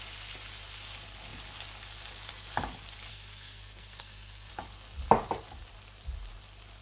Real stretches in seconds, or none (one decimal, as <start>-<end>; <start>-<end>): 0.0-3.1; 4.5-6.8

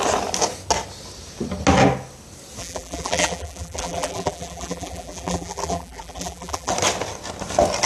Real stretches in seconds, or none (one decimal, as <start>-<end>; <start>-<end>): 0.0-2.6; 6.7-7.9

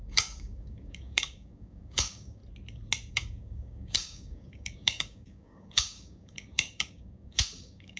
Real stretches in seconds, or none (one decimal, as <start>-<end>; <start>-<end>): 2.4-3.1

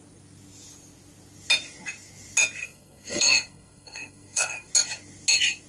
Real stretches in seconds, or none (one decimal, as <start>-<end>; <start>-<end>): 0.0-2.6; 4.7-5.7

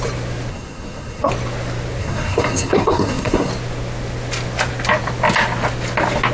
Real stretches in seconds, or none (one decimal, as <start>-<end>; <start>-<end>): 0.0-0.5; 1.3-2.0; 3.5-6.3